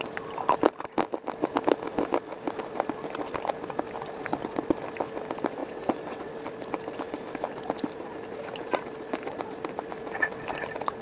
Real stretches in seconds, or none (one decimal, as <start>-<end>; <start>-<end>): 0.0-5.6; 6.3-11.0